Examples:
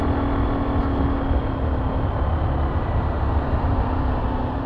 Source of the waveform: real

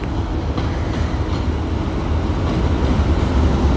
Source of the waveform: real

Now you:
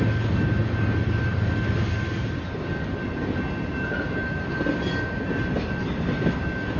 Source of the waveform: real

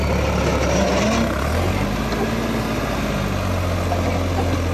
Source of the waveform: real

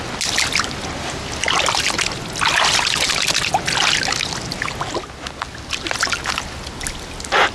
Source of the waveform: real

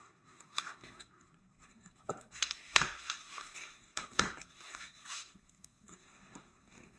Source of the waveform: fake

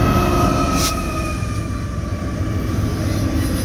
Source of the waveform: real